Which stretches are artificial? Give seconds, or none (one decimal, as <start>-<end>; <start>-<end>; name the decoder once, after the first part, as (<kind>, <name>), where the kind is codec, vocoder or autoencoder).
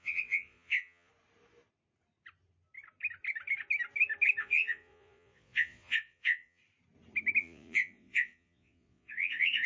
0.0-1.1 (vocoder, Vocos); 4.4-6.6; 7.4-9.7